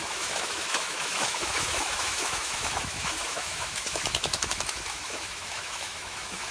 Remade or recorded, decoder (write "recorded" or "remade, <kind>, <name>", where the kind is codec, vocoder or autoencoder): remade, autoencoder, DAC-VAE